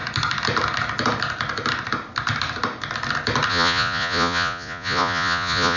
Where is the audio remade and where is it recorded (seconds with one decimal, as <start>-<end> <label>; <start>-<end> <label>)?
0.0-3.5 recorded; 3.5-5.8 remade